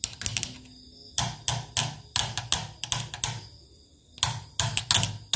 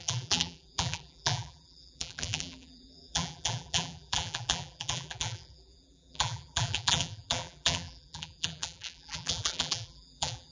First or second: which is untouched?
first